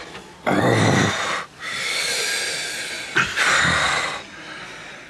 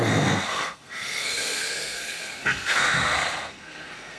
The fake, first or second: second